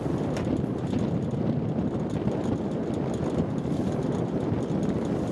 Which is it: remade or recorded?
recorded